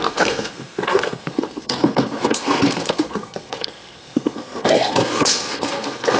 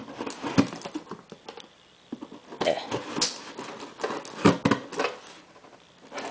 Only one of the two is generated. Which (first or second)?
first